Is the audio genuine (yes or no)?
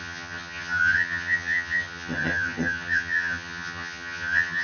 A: no